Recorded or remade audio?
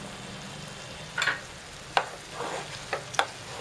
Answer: recorded